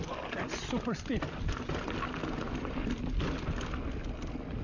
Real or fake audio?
real